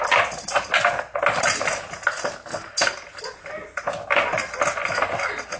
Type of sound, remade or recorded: recorded